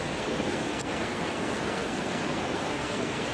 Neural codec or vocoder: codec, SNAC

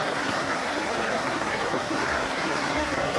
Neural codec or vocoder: codec, SNAC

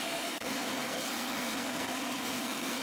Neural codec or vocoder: codec, SNAC